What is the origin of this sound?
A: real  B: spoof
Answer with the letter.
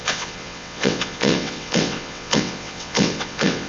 B